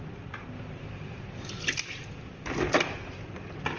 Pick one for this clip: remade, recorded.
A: recorded